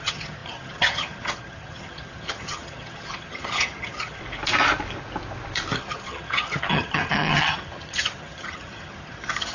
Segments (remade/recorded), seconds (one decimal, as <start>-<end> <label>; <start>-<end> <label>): 0.0-4.2 remade; 4.2-5.8 recorded; 5.8-9.5 remade